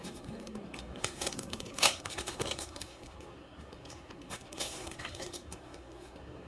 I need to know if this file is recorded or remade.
remade